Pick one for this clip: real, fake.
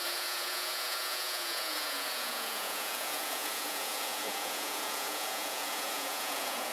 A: fake